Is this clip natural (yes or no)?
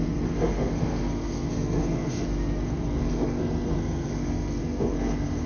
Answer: no